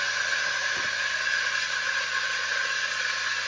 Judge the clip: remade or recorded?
recorded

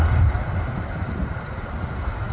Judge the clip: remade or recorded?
recorded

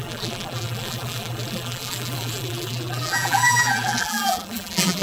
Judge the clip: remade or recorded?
remade